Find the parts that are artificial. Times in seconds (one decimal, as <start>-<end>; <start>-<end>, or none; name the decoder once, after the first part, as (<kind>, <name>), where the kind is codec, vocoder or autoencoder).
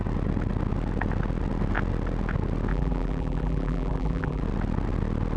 2.7-4.4 (vocoder, BigVGAN v2)